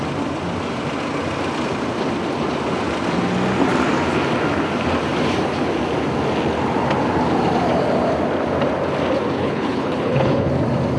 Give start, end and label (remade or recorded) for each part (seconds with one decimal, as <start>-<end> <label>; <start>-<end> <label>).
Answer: 0.0-9.4 recorded; 9.4-10.5 remade; 10.5-11.0 recorded